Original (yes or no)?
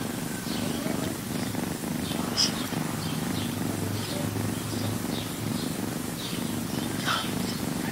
yes